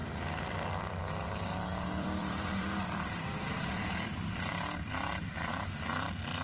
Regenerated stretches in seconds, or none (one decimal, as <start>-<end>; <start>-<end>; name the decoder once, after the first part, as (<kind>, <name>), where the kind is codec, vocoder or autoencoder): 0.0-1.0 (vocoder, BigVGAN v2); 1.7-5.5